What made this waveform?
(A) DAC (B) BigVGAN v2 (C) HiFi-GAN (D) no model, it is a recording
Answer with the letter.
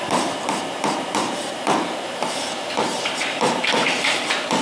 B